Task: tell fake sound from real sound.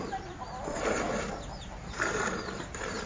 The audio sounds real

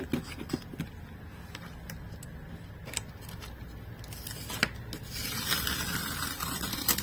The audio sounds real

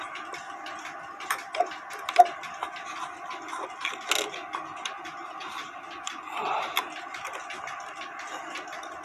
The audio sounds real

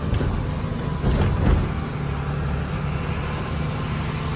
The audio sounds real